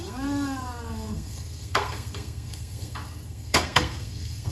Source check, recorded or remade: remade